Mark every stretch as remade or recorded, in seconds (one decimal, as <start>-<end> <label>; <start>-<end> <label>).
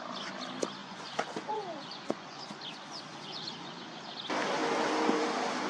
0.0-0.8 recorded; 0.8-4.0 remade; 4.0-5.7 recorded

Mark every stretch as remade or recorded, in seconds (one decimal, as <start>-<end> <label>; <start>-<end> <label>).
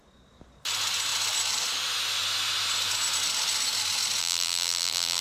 0.0-4.2 recorded; 4.2-5.2 remade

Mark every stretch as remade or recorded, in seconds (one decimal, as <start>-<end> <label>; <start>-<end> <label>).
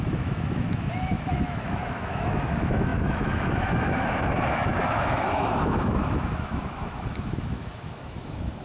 0.0-8.6 remade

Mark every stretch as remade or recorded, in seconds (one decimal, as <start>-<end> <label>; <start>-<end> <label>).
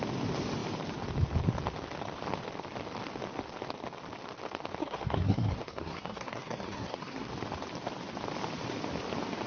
0.0-4.8 recorded; 4.8-7.3 remade; 7.3-9.5 recorded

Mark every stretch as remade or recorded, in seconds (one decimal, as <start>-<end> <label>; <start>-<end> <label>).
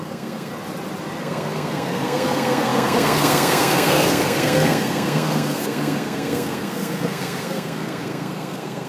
0.0-0.5 remade; 0.5-1.2 recorded; 1.2-8.9 remade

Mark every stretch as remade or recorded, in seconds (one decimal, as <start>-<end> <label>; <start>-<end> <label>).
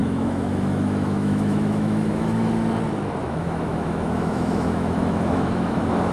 0.0-2.5 remade; 2.5-3.2 recorded; 3.2-6.1 remade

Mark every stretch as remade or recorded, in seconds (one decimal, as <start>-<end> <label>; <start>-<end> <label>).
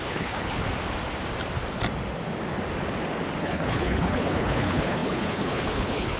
0.0-0.6 remade; 0.6-3.4 recorded; 3.4-6.2 remade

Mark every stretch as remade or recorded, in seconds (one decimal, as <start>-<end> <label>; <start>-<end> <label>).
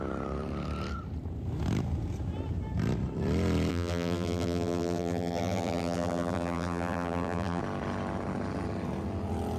0.0-3.7 recorded; 3.7-7.6 remade; 7.6-9.6 recorded